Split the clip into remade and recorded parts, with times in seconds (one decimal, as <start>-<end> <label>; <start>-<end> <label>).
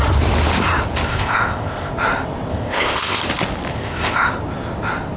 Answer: 0.0-1.1 recorded; 1.1-1.9 remade; 1.9-2.5 recorded; 2.5-3.2 remade; 3.2-3.7 recorded; 3.7-4.3 remade; 4.3-5.2 recorded